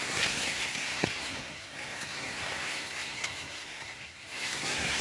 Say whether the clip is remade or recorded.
remade